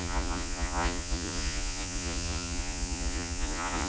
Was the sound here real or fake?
fake